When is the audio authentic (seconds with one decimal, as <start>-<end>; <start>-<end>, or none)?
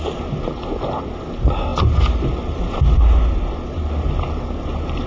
0.0-5.1